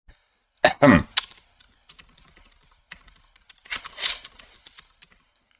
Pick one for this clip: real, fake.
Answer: real